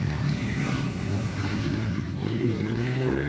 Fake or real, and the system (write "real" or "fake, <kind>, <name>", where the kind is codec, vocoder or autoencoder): fake, codec, SNAC